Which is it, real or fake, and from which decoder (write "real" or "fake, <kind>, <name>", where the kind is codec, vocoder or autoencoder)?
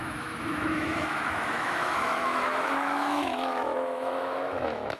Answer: fake, autoencoder, DAC-VAE